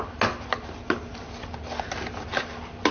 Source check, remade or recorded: recorded